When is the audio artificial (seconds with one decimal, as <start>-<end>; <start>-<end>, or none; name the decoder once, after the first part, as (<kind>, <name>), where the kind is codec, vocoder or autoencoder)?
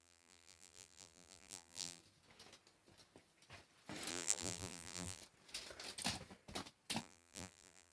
0.0-2.0 (vocoder, BigVGAN v2); 4.1-5.2; 7.0-7.9